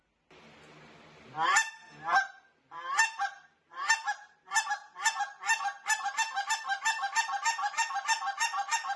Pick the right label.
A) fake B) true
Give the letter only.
B